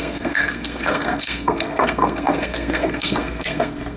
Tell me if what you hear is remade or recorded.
remade